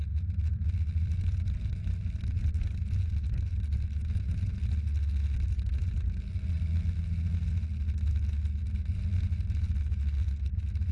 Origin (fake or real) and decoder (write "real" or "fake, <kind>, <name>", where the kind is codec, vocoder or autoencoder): real